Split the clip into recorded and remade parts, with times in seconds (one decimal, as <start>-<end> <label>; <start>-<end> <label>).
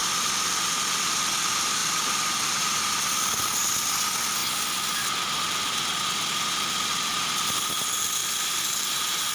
0.0-8.2 recorded; 8.2-9.3 remade